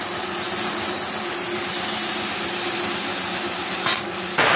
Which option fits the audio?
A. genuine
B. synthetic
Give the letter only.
A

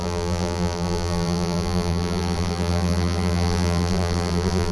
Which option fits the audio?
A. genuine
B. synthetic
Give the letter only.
B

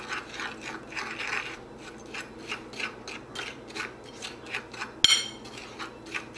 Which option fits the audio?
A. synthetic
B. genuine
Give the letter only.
B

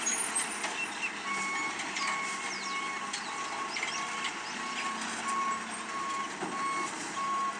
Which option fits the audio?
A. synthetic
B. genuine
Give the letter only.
B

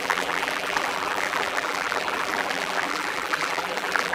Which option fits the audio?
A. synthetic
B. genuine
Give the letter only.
A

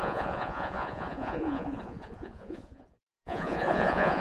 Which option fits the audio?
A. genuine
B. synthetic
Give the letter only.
B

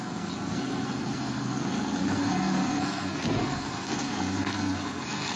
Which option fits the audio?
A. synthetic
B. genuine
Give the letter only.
A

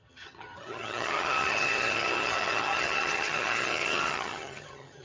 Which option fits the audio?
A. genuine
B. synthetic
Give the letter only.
B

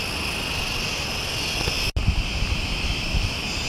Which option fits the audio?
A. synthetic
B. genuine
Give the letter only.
B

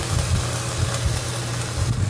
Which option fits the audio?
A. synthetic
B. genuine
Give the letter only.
B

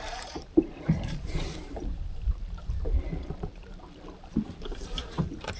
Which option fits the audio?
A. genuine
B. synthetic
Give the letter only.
B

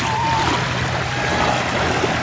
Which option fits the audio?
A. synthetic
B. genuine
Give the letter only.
B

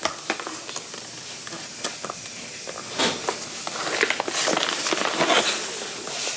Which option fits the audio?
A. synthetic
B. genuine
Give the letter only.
B